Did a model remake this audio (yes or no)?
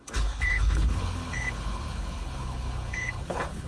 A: yes